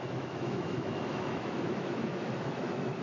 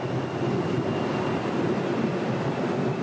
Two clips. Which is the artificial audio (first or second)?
first